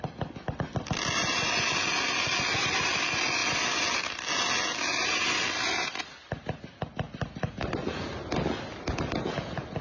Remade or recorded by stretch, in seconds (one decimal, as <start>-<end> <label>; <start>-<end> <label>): 0.0-9.8 recorded